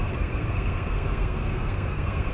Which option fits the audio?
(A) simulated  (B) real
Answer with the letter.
A